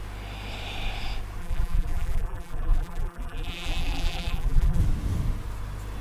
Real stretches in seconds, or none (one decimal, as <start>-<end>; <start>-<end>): 0.0-1.4; 4.8-6.0